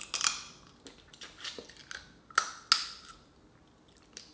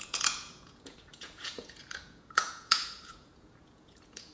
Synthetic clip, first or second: second